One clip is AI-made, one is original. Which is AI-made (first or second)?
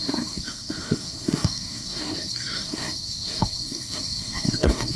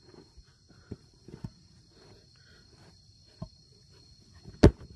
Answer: first